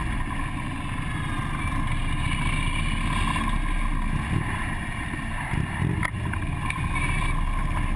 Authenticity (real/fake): real